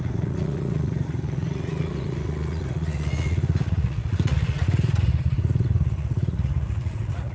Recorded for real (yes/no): no